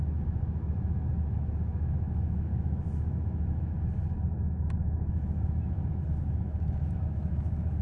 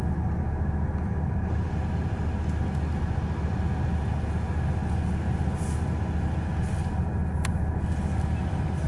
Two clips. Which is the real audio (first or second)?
second